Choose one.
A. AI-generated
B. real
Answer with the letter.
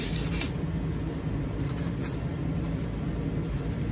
B